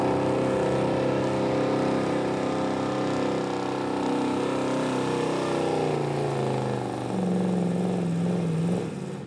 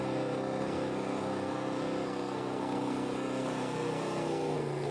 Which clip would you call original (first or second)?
first